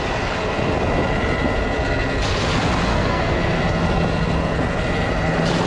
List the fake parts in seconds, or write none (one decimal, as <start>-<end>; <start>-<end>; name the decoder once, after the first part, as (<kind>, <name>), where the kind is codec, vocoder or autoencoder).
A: 2.9-3.6 (codec, SNAC)